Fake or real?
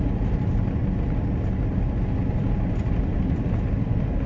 real